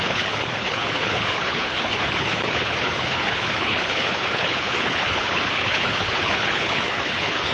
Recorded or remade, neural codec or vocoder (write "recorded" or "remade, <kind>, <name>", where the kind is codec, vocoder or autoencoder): remade, codec, HILCodec